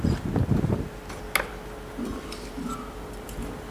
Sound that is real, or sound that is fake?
real